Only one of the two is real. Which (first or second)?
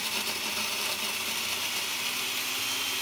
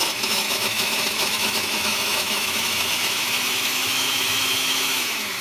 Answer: first